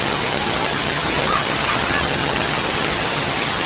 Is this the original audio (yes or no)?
no